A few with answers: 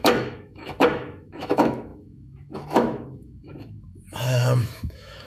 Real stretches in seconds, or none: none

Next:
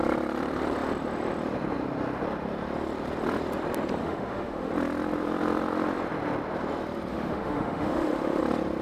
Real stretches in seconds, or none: 0.0-4.0; 4.7-7.1; 8.4-8.8

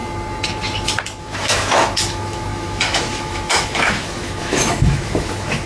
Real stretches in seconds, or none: 0.0-1.2

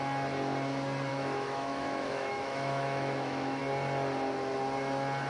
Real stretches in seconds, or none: 0.0-1.1; 3.6-5.3

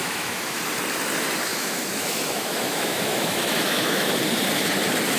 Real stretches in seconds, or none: 0.6-1.5; 4.1-5.2

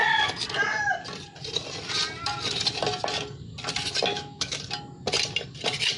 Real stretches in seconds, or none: 0.0-4.1; 4.6-6.0

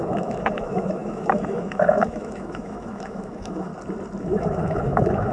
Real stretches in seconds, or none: 3.7-4.2

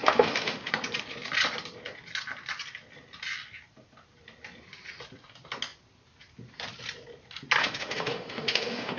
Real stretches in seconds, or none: 0.7-7.6